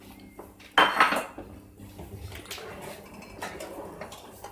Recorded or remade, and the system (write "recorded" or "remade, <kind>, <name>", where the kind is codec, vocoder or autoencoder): recorded